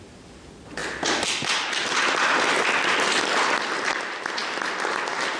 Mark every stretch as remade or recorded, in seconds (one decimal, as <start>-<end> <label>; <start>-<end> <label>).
0.0-5.4 recorded